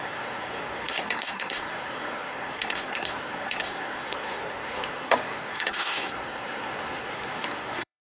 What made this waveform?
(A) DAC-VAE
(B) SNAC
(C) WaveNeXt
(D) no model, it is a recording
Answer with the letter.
B